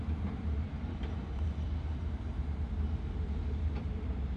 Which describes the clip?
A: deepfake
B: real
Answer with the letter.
A